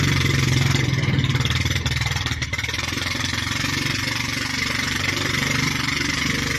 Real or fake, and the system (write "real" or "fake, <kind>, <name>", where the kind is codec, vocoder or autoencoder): fake, vocoder, BigVGAN v2